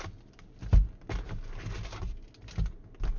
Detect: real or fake real